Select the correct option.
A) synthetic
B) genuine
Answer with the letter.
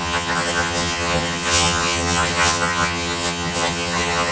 A